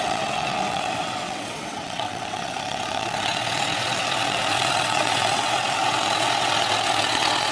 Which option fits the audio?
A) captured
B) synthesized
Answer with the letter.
B